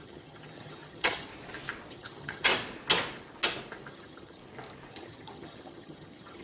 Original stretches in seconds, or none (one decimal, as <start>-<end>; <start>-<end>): 1.3-1.9; 2.5-3.9; 4.4-4.9